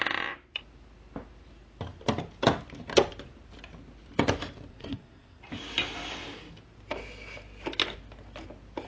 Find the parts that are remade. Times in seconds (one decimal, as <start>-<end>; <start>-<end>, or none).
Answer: 4.7-5.4